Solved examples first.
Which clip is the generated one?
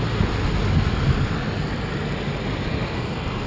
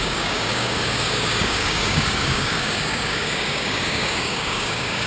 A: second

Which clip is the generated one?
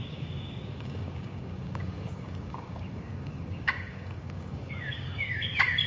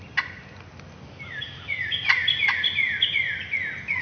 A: first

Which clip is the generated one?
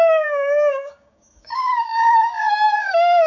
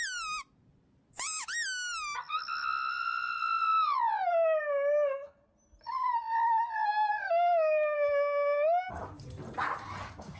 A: first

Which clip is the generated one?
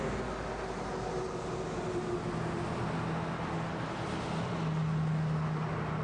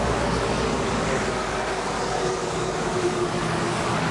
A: second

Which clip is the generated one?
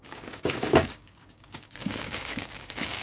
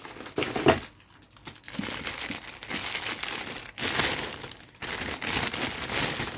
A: first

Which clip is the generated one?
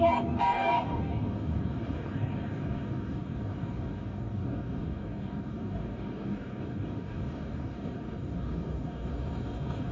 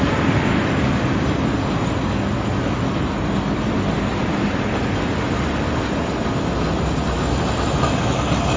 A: first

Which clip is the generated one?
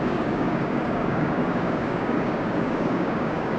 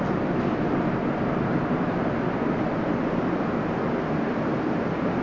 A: first